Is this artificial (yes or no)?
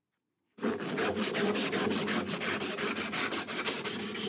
no